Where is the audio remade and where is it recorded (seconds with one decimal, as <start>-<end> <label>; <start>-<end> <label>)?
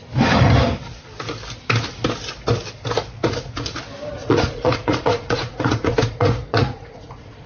0.0-3.2 recorded; 3.2-3.8 remade; 3.8-4.2 recorded; 4.2-7.5 remade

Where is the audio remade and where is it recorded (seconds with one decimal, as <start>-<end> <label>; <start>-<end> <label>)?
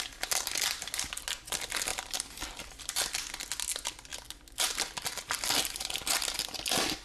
0.0-7.0 recorded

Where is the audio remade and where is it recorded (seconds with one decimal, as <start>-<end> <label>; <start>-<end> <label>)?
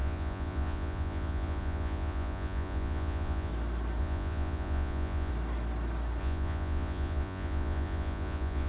0.0-3.5 remade; 3.5-4.0 recorded; 4.0-5.3 remade; 5.3-6.2 recorded; 6.2-8.7 remade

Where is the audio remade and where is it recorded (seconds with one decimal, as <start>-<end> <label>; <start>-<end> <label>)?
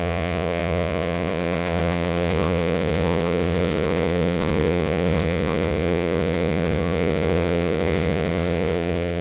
0.0-9.2 remade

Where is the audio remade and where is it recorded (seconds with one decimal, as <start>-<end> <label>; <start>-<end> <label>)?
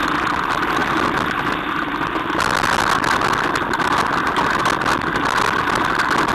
0.0-6.3 recorded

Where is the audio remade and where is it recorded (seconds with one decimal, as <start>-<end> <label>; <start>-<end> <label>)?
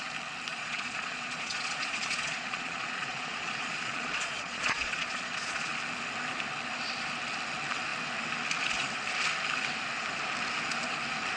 0.0-0.5 recorded; 0.5-5.7 remade; 5.7-11.4 recorded